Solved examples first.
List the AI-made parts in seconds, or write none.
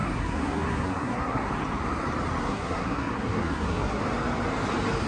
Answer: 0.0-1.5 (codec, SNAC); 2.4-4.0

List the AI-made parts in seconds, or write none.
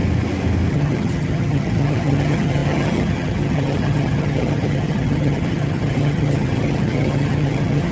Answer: 0.7-7.9 (vocoder, HiFi-GAN)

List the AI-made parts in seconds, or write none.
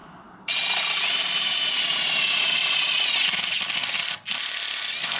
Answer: 0.0-3.1 (vocoder, BigVGAN v2)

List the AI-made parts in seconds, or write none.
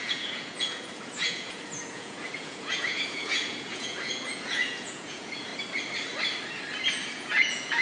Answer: 0.0-5.5 (vocoder, Vocos); 6.9-7.8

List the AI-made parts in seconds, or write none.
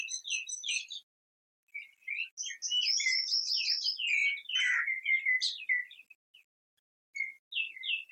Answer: none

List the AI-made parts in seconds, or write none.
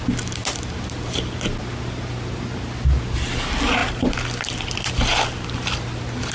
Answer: none